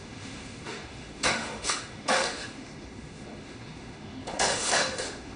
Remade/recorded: remade